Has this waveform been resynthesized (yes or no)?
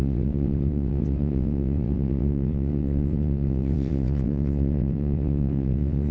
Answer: yes